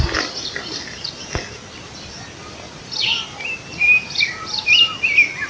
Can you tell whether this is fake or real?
real